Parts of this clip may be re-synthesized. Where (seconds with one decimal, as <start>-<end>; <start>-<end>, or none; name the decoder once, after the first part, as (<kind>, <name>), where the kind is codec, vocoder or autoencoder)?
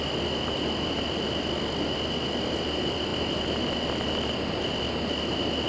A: none